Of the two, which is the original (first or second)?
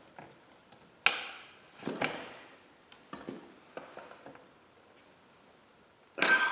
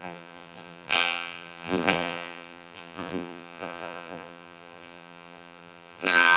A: first